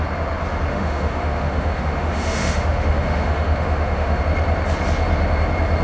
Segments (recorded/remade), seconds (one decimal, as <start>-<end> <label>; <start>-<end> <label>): 0.0-0.7 recorded; 0.7-4.2 remade; 4.2-5.8 recorded